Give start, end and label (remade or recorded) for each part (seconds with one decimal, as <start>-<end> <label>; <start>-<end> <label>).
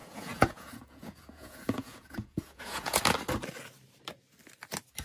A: 0.0-3.0 remade; 3.0-5.0 recorded